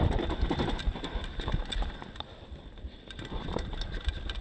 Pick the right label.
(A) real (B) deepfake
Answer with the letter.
A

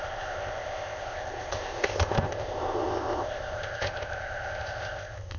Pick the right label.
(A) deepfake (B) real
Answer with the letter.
A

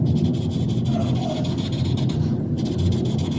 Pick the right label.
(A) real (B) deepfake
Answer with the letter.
A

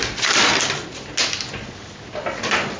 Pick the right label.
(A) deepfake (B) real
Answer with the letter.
B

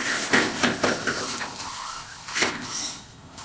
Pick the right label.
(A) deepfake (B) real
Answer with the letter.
A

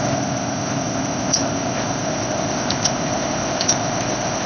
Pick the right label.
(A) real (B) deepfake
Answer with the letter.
B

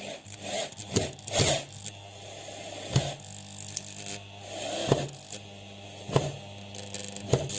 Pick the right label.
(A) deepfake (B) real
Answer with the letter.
B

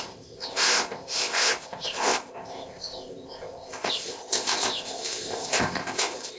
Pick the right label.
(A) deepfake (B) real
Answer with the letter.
A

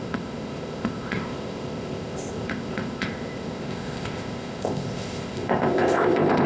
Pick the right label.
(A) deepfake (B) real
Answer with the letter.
A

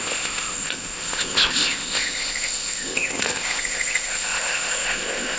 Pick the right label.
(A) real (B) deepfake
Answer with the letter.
B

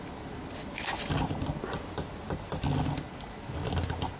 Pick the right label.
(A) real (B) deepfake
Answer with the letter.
A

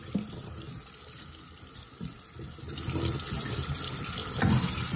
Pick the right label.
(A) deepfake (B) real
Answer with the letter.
B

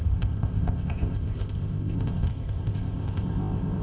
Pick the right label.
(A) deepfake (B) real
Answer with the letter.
A